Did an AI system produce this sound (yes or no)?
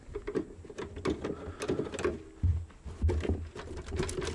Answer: no